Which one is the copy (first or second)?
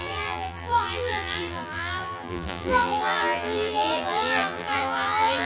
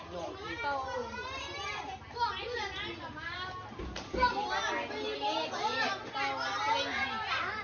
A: first